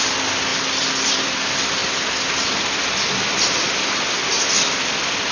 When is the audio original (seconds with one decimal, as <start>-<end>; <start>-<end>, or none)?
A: 0.0-5.3